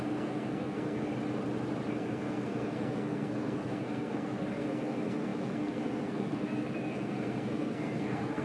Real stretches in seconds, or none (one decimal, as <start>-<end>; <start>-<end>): 1.1-1.9